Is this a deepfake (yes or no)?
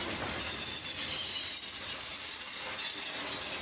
no